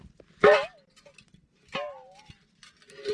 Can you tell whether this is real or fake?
real